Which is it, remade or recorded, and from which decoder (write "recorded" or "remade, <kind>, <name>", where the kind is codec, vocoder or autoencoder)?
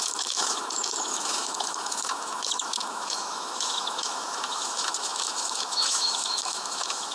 remade, autoencoder, DAC-VAE